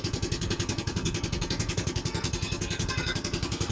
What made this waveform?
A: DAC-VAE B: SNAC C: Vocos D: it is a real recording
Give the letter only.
B